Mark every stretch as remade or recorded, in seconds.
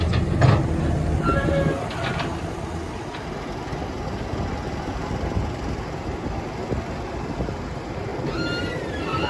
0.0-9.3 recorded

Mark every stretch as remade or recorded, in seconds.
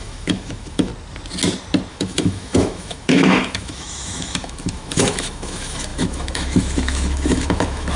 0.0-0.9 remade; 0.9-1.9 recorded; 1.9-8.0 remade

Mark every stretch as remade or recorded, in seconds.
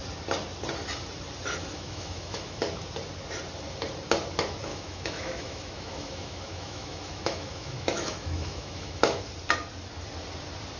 0.0-1.6 recorded; 1.6-2.6 remade; 2.6-4.7 recorded; 4.7-9.2 remade; 9.2-10.8 recorded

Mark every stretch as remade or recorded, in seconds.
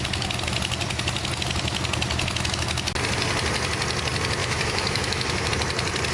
0.0-4.4 recorded; 4.4-5.5 remade; 5.5-6.1 recorded